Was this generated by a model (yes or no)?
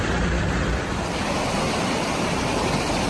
yes